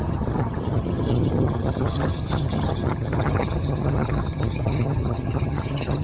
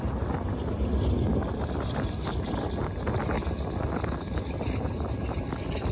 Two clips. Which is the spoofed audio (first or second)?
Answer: first